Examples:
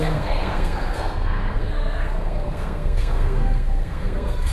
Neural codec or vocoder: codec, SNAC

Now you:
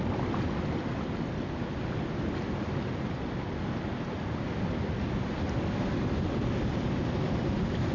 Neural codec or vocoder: none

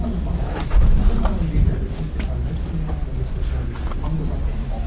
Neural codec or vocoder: none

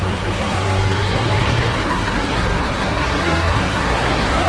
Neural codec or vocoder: codec, SNAC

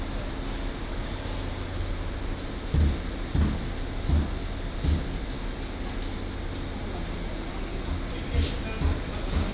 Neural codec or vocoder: none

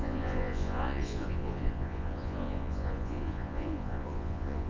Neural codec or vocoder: vocoder, Vocos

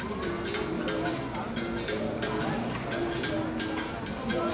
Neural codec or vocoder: none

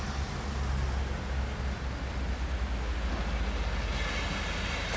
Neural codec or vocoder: none